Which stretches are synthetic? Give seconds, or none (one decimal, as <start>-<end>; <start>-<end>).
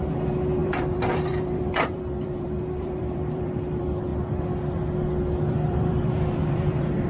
0.0-4.1; 5.4-7.1